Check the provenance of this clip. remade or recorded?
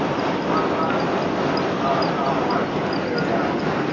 recorded